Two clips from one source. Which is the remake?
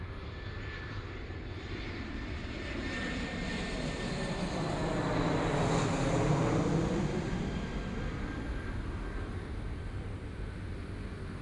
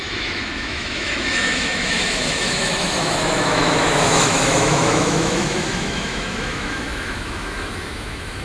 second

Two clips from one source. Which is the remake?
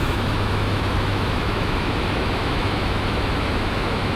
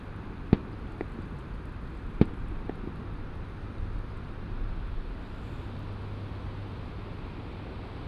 first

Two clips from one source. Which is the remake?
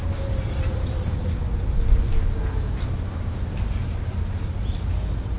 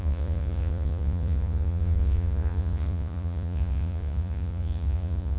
second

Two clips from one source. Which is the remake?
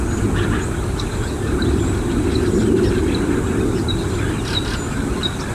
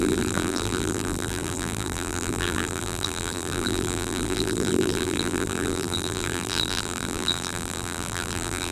second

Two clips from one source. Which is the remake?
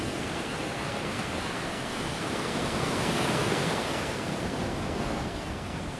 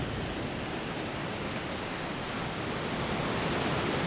first